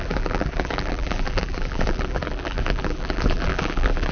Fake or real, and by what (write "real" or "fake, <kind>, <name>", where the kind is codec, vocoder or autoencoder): fake, vocoder, BigVGAN v2